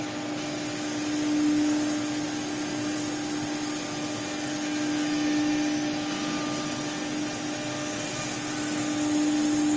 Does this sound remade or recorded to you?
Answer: recorded